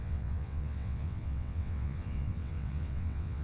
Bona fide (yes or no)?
no